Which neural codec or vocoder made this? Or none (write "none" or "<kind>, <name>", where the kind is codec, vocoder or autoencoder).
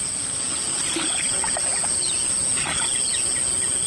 none